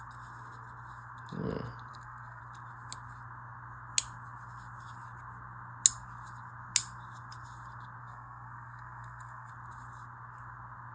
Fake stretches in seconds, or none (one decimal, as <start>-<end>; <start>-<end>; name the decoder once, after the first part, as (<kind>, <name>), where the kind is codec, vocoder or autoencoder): 1.9-2.4 (codec, SNAC); 8.0-9.5